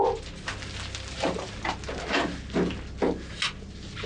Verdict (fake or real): real